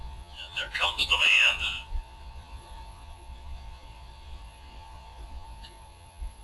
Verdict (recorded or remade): remade